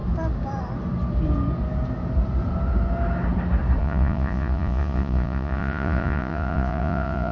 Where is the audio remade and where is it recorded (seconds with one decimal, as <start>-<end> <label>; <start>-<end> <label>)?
0.0-3.8 recorded; 3.8-7.3 remade